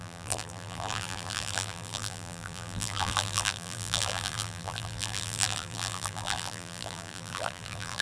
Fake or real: fake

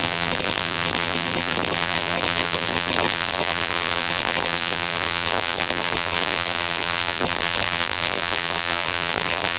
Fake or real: fake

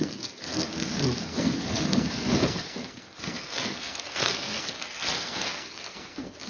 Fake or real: fake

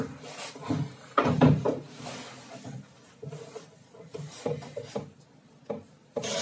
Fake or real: real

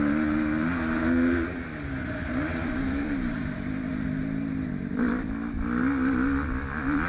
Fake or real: real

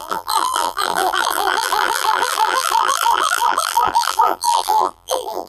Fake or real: fake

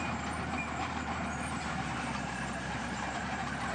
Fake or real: fake